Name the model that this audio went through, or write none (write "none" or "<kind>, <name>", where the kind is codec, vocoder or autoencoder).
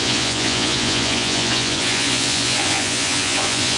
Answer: vocoder, Vocos